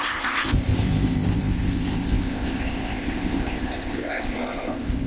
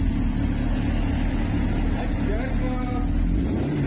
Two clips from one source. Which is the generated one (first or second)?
first